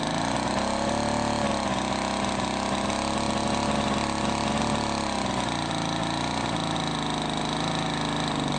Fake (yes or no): no